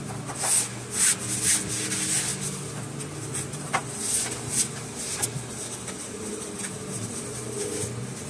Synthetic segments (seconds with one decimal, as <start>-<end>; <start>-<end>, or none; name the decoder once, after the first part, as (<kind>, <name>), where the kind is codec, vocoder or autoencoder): none